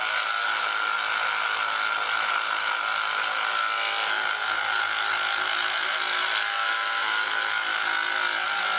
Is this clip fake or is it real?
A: real